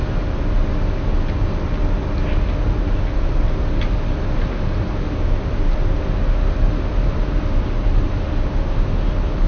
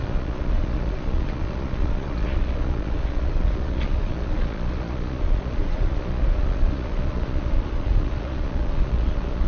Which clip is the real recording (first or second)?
first